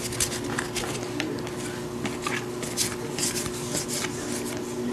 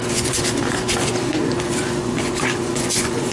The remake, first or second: second